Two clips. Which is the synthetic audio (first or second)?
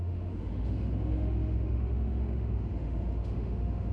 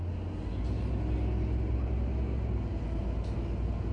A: first